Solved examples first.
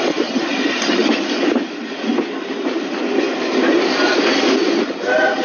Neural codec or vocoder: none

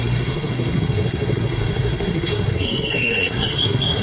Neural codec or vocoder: codec, SNAC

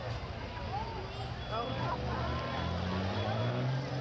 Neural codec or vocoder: none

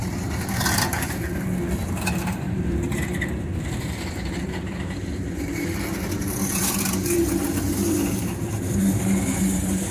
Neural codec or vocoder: vocoder, BigVGAN v2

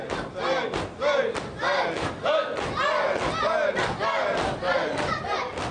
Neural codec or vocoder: none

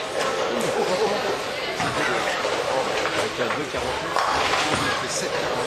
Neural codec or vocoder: vocoder, BigVGAN v2